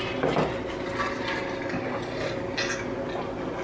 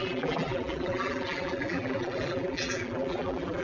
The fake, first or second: second